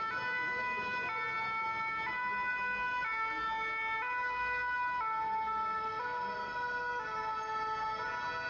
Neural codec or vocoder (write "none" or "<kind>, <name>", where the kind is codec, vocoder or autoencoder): none